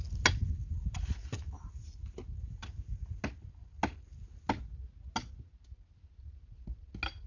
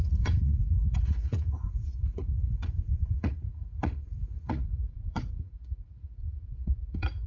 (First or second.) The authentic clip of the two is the first